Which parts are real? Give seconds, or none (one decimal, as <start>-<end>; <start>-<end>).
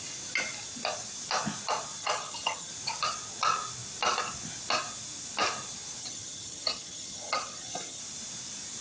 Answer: 0.0-2.0; 2.7-6.0; 8.0-8.8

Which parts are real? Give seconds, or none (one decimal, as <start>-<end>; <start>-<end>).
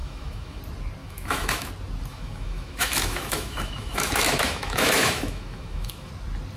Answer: 0.6-1.0; 1.7-2.1; 6.1-6.6